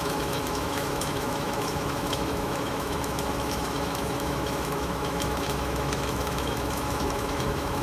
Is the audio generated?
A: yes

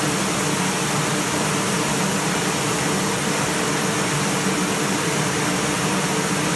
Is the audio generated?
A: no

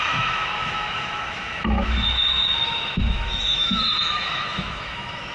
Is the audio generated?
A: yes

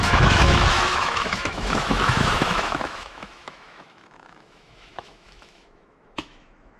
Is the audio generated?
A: yes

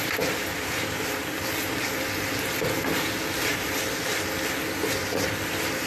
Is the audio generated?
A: no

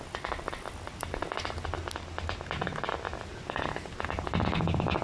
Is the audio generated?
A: no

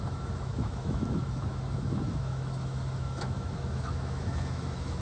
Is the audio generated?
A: yes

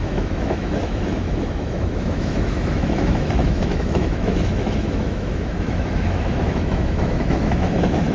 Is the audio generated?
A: yes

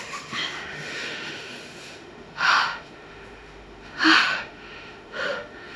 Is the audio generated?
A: yes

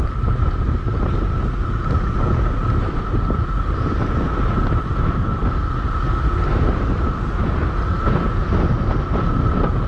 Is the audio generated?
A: no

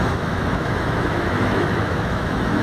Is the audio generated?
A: yes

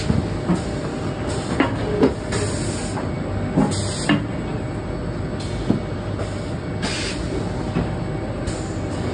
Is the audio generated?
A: no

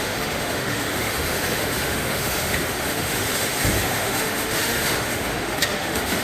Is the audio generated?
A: yes